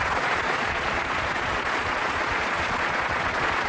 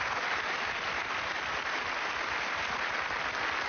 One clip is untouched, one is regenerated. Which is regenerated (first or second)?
first